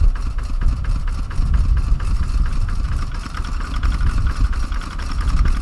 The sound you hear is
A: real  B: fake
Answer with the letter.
A